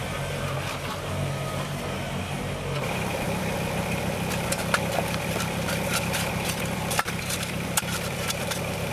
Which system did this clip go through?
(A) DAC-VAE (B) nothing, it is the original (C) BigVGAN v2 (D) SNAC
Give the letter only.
B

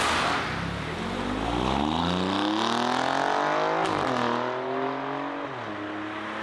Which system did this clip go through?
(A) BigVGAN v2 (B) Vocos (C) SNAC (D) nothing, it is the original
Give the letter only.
D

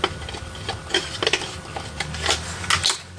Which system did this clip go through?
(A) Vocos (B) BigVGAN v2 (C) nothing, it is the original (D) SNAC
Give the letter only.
C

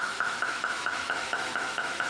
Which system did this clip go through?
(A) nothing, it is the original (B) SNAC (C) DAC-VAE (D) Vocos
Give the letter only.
C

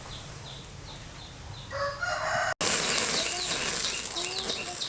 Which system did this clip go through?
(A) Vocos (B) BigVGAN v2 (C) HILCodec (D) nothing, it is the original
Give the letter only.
D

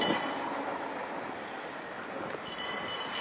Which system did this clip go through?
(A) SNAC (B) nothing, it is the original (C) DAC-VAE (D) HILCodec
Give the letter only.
B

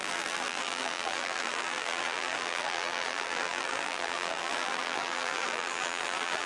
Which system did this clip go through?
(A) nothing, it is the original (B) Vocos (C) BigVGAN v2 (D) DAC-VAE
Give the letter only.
C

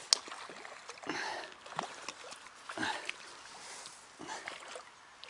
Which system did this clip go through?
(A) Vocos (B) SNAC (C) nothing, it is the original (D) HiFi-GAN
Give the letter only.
C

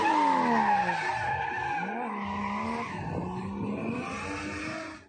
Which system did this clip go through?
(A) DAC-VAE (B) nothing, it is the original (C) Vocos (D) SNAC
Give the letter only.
B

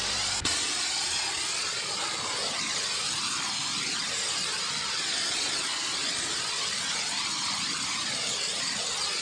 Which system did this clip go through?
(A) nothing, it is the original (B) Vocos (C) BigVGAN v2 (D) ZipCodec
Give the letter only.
A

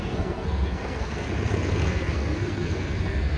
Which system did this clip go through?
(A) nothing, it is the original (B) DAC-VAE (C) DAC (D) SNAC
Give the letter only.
D